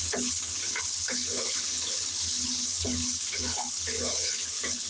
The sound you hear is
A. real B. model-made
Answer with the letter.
B